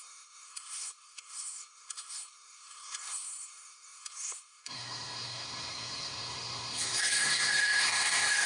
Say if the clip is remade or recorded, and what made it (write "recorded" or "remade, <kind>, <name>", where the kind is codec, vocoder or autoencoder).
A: remade, codec, SNAC